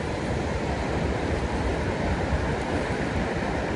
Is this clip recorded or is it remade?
recorded